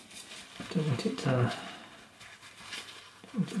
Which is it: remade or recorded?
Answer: recorded